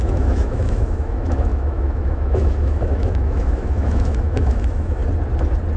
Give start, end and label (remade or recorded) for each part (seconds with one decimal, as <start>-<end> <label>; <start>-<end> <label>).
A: 0.0-5.0 remade; 5.0-5.8 recorded